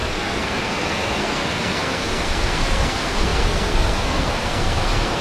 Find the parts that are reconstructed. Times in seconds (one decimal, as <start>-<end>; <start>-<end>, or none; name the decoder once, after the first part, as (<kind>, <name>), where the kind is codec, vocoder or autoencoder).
0.0-5.2 (codec, SNAC)